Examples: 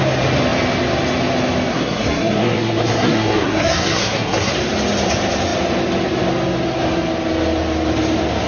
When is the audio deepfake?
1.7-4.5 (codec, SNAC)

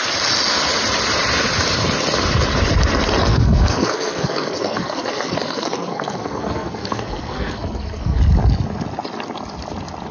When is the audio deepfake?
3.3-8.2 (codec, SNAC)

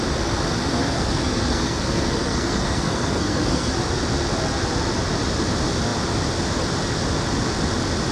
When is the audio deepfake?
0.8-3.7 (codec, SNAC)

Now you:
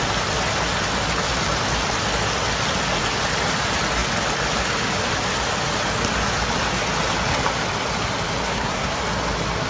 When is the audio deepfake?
8.5-9.0 (codec, SNAC)

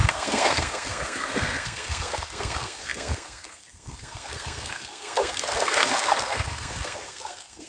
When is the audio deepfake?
0.0-7.7 (codec, SNAC)